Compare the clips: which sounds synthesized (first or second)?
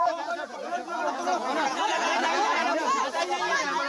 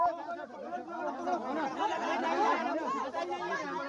first